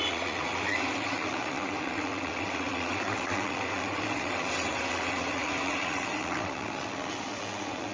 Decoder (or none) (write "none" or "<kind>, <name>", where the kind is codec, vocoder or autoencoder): vocoder, WaveNeXt